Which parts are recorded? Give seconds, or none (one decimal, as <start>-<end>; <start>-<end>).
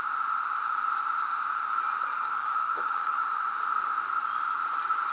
0.0-2.1; 3.2-5.1